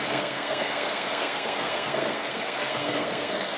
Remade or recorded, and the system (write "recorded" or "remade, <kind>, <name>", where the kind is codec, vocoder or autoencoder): remade, codec, SNAC